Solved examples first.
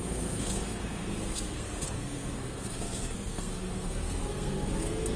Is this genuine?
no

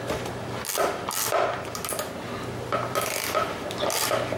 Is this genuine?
no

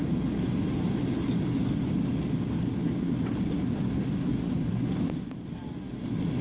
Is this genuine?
yes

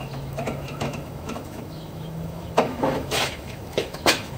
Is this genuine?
no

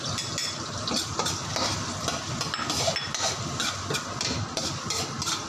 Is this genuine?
yes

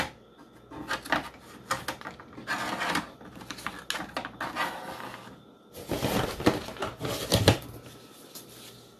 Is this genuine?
yes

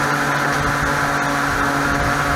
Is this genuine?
yes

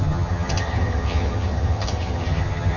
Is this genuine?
no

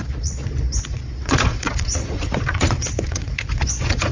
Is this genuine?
no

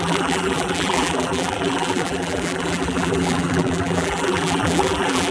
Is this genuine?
no